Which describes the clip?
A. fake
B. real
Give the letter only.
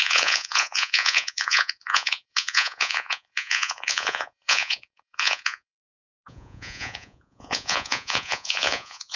A